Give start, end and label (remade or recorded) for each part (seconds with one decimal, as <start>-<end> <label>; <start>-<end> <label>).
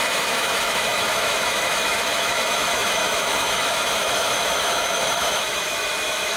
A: 0.0-6.4 remade